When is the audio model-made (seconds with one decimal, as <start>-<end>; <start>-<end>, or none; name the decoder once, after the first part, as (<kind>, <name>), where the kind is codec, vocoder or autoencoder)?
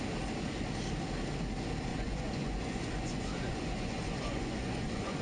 1.9-5.2 (vocoder, Vocos)